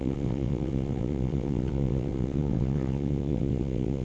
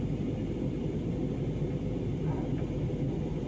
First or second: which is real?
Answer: second